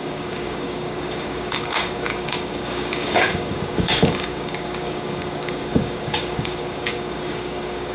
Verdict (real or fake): fake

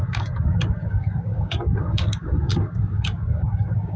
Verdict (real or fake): fake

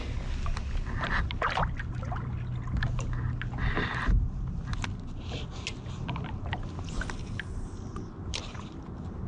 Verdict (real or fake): real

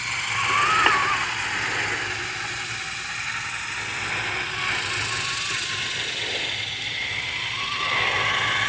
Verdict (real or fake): real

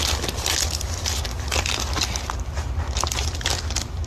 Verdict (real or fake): real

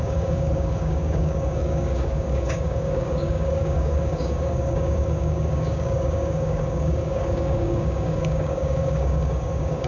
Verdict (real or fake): fake